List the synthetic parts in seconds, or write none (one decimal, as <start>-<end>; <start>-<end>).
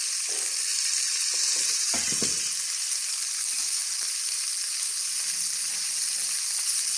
none